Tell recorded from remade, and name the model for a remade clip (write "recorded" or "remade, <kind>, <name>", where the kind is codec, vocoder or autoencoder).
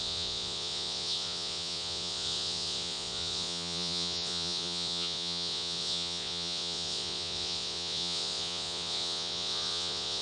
remade, vocoder, Vocos